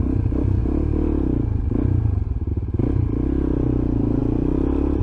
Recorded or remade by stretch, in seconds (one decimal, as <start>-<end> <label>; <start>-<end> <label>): 0.0-5.0 recorded